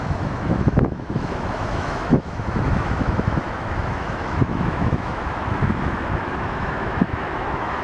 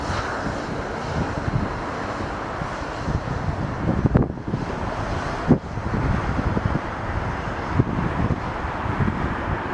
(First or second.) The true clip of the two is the second